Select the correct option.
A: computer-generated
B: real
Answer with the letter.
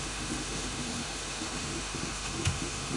A